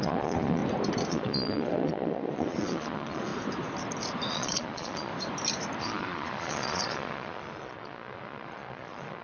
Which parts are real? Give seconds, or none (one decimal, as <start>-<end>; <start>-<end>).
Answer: 0.6-1.1; 3.3-4.3; 5.1-5.8